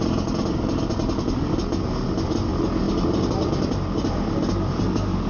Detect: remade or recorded recorded